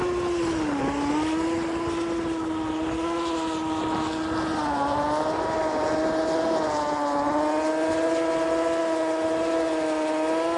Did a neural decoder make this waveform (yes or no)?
no